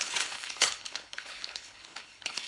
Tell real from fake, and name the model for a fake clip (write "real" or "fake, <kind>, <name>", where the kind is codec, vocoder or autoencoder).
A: fake, codec, HILCodec